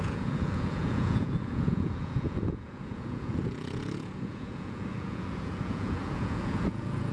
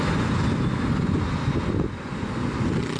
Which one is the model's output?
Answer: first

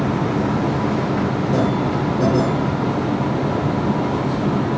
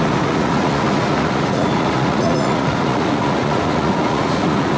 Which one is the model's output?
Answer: second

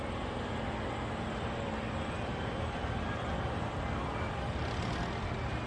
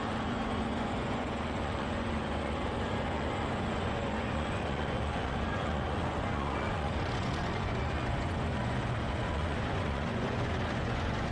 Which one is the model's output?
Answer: second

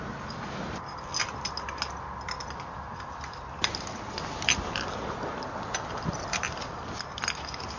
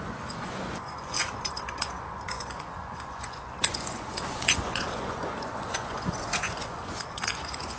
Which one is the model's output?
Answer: second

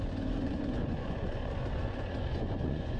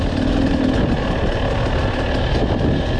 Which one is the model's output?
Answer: first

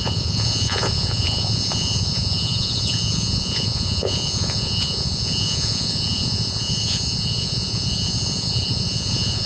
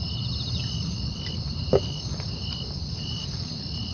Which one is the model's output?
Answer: first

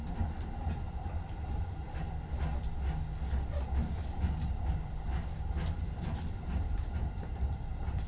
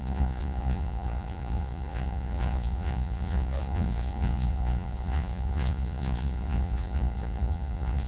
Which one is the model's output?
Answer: second